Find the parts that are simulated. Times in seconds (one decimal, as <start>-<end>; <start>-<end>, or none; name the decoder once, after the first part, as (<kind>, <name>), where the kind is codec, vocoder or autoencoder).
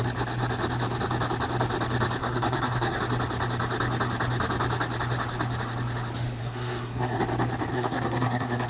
2.2-3.0 (codec, SNAC); 6.4-7.2; 7.7-8.7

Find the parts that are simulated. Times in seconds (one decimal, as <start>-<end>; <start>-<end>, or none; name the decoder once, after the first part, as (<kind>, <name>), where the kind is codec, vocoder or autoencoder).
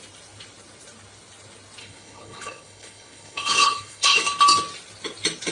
1.8-4.2 (codec, HILCodec)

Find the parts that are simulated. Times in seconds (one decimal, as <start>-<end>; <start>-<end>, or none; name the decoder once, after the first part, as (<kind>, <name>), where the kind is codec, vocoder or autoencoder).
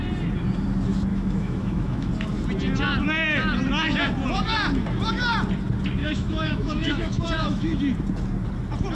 1.1-2.1 (autoencoder, DAC-VAE); 6.0-7.8